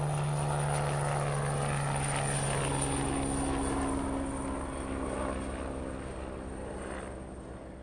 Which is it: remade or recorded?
recorded